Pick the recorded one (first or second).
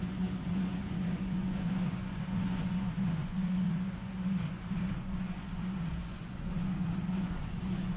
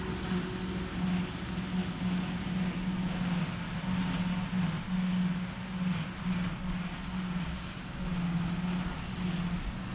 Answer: second